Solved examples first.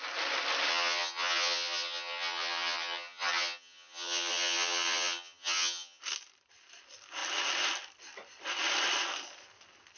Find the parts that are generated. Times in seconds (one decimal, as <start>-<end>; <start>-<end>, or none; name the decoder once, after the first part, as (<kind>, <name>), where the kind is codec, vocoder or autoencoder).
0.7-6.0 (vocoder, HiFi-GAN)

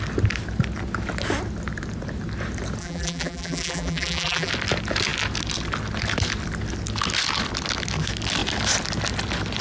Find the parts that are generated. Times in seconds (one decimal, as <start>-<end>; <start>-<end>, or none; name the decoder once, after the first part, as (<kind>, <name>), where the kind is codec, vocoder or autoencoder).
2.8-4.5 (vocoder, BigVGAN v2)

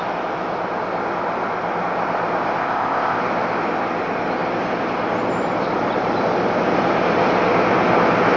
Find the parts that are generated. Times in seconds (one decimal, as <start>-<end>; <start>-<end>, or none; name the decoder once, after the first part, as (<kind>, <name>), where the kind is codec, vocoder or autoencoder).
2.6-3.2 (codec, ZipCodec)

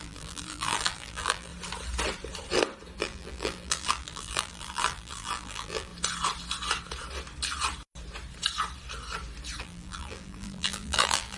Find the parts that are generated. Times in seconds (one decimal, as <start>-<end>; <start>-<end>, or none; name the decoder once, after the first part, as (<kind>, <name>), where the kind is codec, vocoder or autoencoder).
0.0-1.5 (vocoder, BigVGAN v2); 3.0-5.9; 9.6-11.4